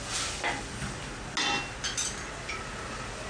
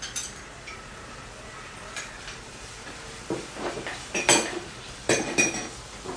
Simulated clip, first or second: second